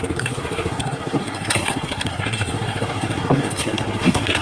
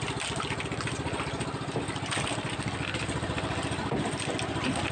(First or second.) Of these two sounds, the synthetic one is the first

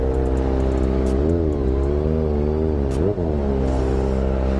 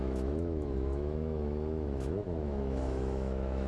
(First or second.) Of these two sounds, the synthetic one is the second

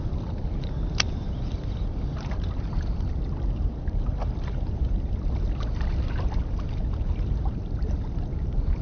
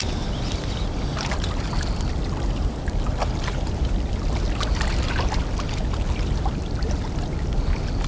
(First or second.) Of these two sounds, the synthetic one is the first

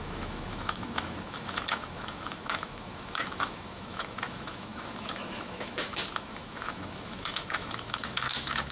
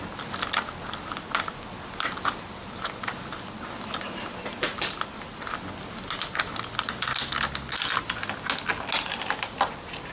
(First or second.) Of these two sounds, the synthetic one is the first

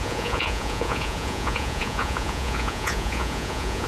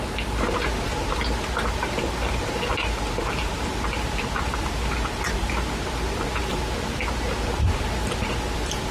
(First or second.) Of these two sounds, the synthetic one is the first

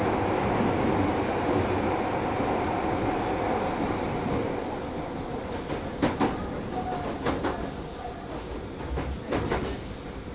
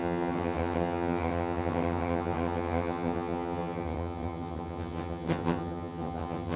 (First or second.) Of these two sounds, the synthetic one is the second